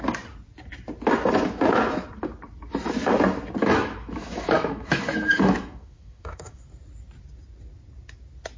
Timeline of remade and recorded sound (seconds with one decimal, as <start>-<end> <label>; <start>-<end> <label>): 0.0-3.6 recorded; 3.6-6.6 remade; 6.6-8.6 recorded